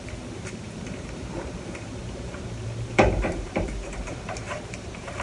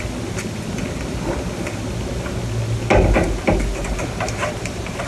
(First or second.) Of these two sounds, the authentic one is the second